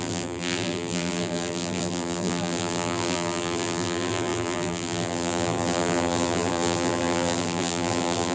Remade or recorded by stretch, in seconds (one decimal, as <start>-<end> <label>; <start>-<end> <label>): 0.0-8.3 remade